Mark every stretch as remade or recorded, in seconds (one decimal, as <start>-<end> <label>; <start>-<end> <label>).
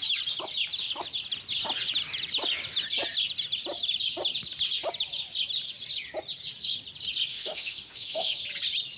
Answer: 0.0-7.3 recorded; 7.3-8.4 remade; 8.4-9.0 recorded